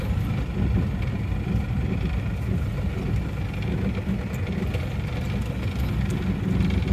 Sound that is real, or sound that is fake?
real